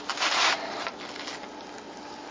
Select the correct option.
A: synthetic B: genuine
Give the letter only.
B